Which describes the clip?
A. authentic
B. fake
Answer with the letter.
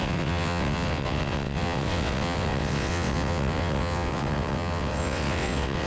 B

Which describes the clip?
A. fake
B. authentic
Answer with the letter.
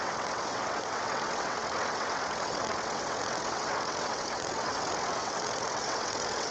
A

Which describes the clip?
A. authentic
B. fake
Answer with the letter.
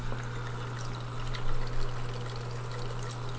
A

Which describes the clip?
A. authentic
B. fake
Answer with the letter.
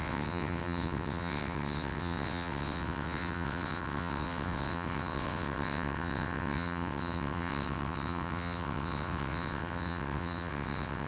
B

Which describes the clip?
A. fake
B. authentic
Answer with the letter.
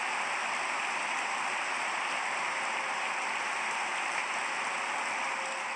B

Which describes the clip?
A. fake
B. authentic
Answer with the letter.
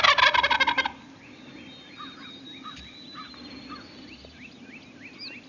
B